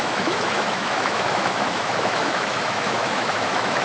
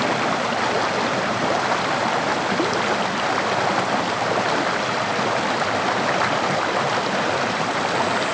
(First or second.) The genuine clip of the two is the second